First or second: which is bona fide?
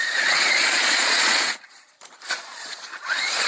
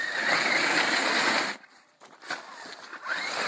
second